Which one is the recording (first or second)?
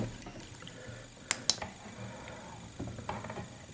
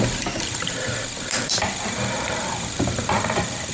first